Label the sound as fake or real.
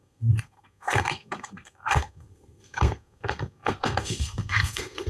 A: fake